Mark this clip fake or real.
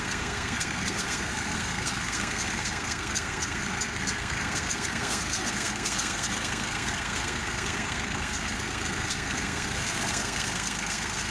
fake